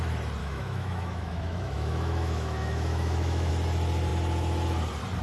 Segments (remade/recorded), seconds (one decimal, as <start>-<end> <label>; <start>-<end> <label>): 0.0-0.4 recorded; 0.4-3.5 remade; 3.5-5.2 recorded